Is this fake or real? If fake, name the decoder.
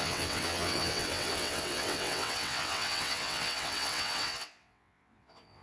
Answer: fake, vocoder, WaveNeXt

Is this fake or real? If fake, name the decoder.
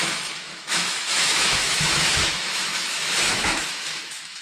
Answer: fake, autoencoder, DAC-VAE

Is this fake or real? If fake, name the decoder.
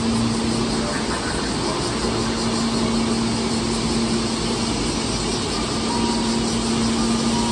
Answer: real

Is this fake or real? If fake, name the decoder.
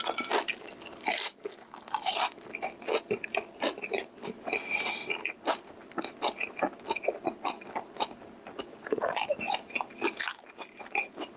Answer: real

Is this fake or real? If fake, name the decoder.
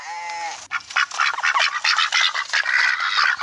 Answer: real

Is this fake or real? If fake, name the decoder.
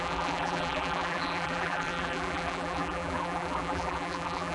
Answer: fake, vocoder, BigVGAN v2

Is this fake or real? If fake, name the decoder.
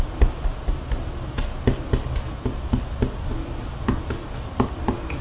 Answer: real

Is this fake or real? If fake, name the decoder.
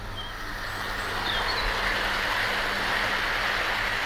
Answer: real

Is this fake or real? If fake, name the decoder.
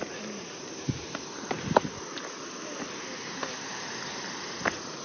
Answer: real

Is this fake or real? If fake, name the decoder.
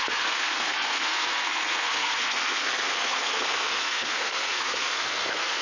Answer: fake, codec, SNAC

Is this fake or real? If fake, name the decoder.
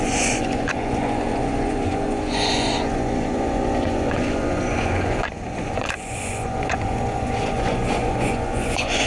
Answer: fake, vocoder, Vocos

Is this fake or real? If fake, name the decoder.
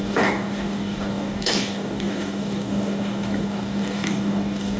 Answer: fake, codec, DAC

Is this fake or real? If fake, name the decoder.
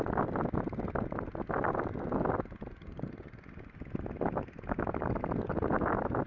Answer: real